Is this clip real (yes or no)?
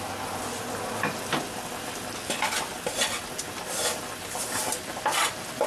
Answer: yes